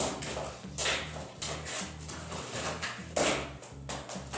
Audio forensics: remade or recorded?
recorded